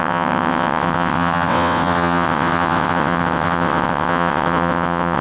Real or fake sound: fake